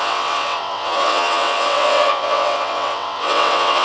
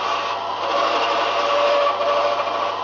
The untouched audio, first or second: second